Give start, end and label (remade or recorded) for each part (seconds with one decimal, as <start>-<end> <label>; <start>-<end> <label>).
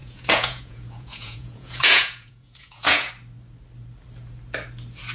0.0-3.1 remade; 3.1-5.1 recorded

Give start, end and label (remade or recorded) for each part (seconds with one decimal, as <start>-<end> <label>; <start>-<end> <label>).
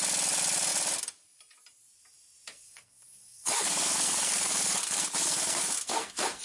0.0-2.5 recorded; 2.5-6.4 remade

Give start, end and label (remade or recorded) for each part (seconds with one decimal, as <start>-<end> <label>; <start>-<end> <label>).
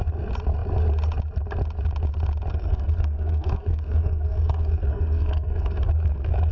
0.0-2.5 recorded; 2.5-6.5 remade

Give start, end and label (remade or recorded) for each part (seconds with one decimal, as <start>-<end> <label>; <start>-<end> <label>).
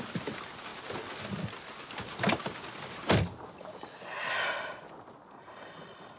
0.0-6.2 recorded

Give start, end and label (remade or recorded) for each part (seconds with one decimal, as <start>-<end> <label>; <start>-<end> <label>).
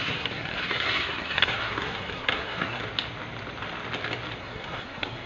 0.0-2.8 remade; 2.8-4.4 recorded; 4.4-5.3 remade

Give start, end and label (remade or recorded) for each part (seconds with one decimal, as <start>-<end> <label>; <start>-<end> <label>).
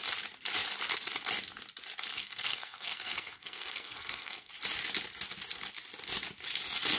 0.0-2.2 recorded; 2.2-4.5 remade; 4.5-7.0 recorded